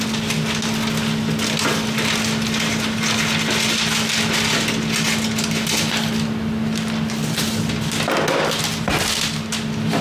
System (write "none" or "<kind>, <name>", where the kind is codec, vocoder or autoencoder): none